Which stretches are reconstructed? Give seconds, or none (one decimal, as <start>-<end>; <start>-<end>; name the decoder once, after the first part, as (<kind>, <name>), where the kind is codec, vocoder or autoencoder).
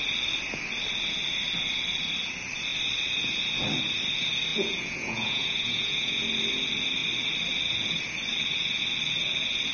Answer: 4.5-6.2 (vocoder, Vocos)